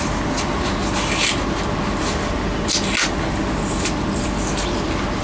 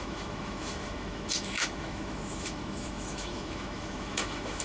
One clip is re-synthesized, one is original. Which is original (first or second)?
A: first